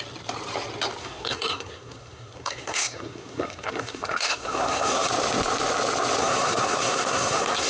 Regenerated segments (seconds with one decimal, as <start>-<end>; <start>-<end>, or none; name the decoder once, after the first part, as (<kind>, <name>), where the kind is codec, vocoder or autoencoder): 1.0-5.1 (codec, SNAC); 6.2-7.7